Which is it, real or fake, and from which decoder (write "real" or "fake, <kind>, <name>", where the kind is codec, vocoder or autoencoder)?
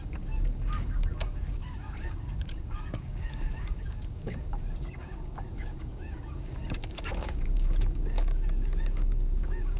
fake, codec, DAC